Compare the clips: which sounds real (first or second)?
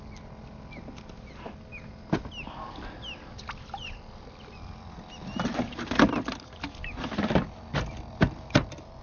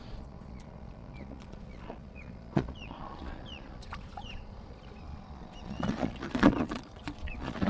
first